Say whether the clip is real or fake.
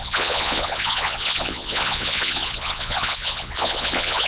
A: fake